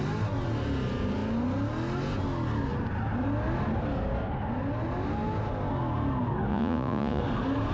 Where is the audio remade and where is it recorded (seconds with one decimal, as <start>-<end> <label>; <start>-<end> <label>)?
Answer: 0.0-6.5 recorded; 6.5-7.2 remade; 7.2-7.7 recorded